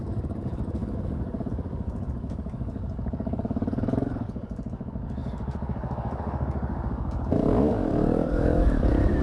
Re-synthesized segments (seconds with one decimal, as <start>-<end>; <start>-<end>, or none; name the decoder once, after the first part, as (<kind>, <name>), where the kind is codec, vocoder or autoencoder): 0.0-9.2 (codec, DAC)